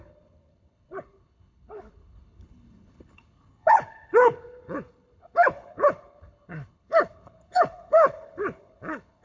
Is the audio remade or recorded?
remade